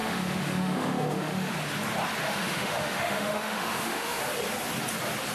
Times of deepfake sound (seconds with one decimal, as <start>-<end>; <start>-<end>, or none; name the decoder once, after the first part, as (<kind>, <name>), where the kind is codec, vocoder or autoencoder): 0.0-1.5 (autoencoder, DAC-VAE); 2.2-4.2